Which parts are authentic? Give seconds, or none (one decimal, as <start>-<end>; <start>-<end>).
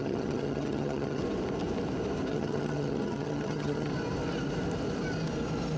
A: 1.2-2.3; 3.9-5.8